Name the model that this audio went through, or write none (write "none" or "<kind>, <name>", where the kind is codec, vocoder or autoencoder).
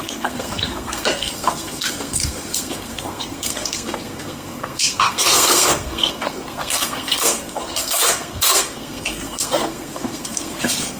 codec, SNAC